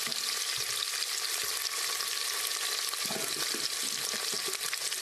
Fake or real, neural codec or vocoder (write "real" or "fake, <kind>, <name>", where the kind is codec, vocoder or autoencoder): real